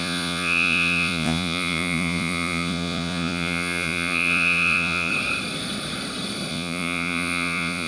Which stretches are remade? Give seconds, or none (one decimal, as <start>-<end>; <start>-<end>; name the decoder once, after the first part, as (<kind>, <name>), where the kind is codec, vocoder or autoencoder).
0.0-5.1 (vocoder, Vocos); 6.5-7.9